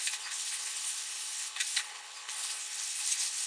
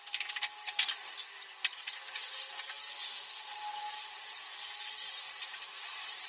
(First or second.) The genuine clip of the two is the second